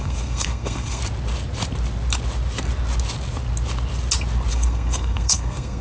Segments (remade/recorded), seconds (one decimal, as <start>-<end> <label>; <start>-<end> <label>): 0.0-1.0 remade; 1.0-4.5 recorded; 4.5-5.8 remade